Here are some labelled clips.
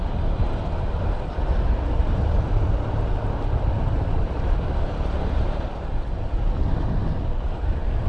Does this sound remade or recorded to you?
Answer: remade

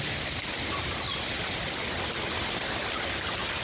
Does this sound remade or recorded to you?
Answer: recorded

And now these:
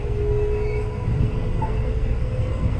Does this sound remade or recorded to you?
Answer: remade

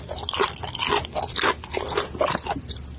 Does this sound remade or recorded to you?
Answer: recorded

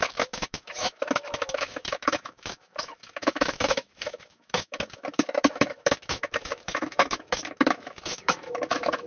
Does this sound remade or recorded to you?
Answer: remade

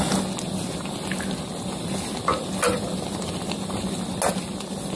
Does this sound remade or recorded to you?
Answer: recorded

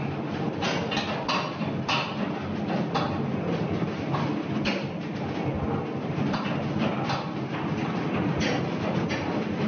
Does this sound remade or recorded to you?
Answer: recorded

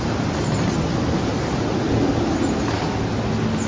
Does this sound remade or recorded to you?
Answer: recorded